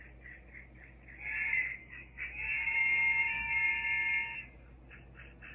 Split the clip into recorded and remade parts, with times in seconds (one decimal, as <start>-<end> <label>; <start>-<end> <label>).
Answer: 0.0-1.8 recorded; 1.8-3.7 remade; 3.7-5.5 recorded

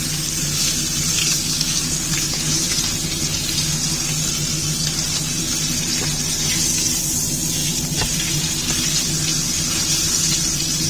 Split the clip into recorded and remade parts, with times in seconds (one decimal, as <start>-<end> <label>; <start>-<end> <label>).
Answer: 0.0-1.2 recorded; 1.2-2.8 remade; 2.8-6.3 recorded; 6.3-6.8 remade; 6.8-10.9 recorded

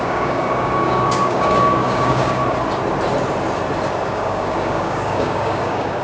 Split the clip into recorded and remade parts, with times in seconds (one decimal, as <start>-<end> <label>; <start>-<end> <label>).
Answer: 0.0-2.4 remade; 2.4-4.1 recorded; 4.1-6.0 remade

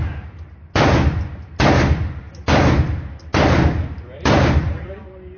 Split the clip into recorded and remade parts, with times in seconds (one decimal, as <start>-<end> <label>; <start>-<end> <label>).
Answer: 0.0-5.4 recorded

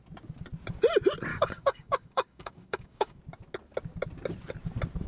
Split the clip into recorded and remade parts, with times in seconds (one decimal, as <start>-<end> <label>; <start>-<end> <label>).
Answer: 0.0-1.3 recorded; 1.3-3.2 remade; 3.2-5.1 recorded

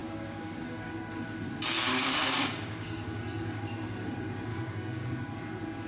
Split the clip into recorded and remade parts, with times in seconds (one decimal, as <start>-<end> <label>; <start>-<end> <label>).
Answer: 0.0-0.9 remade; 0.9-1.9 recorded; 1.9-3.6 remade; 3.6-4.5 recorded; 4.5-5.3 remade; 5.3-5.9 recorded

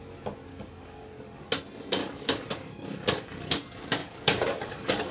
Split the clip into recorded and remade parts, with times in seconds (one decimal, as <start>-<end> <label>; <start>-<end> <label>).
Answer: 0.0-0.5 recorded; 0.5-1.5 remade; 1.5-2.0 recorded; 2.0-3.5 remade; 3.5-4.0 recorded; 4.0-5.1 remade